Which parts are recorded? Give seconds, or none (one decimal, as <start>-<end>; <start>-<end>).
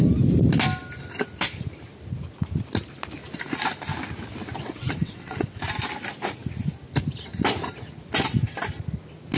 0.0-4.6; 5.6-9.4